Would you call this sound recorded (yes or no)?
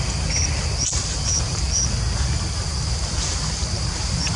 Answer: no